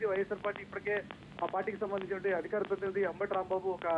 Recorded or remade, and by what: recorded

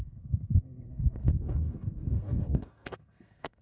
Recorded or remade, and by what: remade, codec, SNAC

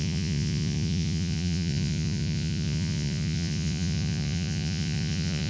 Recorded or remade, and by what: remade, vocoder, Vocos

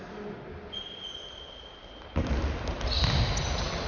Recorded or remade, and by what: recorded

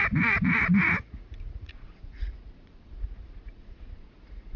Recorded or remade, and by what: remade, vocoder, Vocos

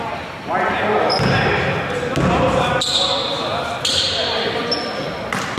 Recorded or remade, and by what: recorded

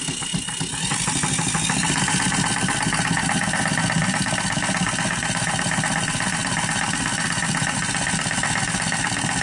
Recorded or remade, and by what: recorded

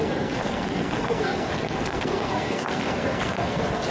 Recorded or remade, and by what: remade, codec, SNAC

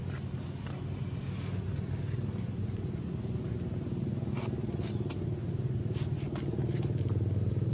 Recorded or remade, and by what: recorded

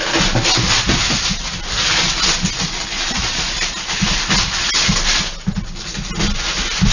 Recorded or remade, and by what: recorded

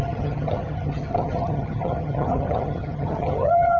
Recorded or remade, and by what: remade, vocoder, HiFi-GAN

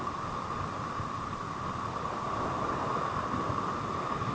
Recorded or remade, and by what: recorded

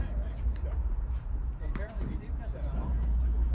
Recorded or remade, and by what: remade, vocoder, BigVGAN v2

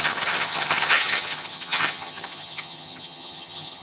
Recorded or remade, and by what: remade, vocoder, HiFi-GAN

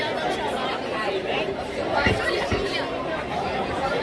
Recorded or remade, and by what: recorded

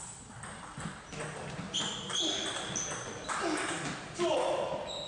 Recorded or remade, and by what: recorded